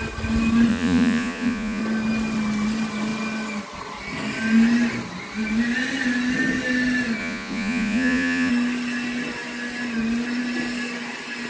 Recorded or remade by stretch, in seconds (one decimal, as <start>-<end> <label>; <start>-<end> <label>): 0.0-0.7 recorded; 0.7-1.8 remade; 1.8-7.2 recorded; 7.2-8.5 remade; 8.5-11.5 recorded